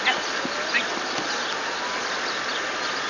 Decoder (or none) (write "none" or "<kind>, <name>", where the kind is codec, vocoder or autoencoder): none